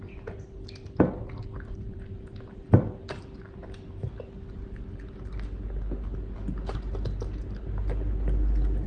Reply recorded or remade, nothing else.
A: recorded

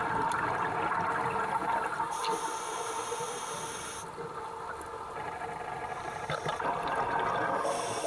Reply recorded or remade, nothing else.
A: recorded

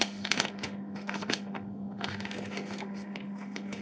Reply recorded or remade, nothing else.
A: remade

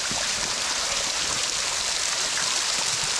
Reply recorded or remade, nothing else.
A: remade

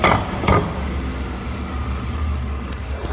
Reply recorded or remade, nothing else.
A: recorded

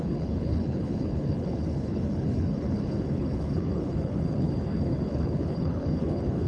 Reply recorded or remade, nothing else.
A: remade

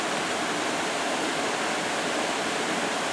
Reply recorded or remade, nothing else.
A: recorded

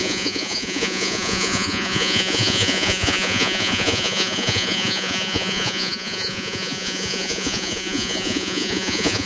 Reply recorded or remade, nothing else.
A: remade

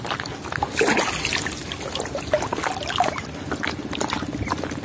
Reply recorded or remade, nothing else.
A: recorded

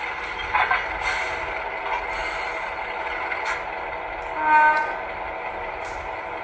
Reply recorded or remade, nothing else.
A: recorded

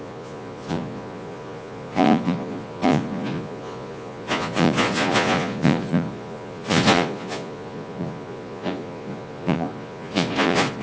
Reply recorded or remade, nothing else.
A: remade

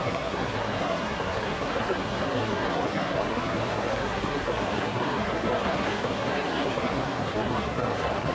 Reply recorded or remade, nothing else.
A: remade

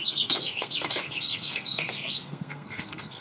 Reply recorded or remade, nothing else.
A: remade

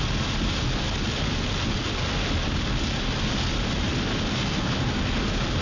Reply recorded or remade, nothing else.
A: recorded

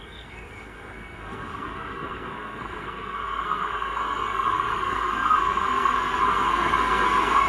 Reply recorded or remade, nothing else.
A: remade